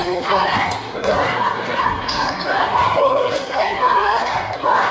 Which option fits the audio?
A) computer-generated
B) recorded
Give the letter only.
A